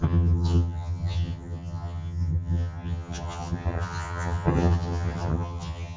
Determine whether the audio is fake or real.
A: fake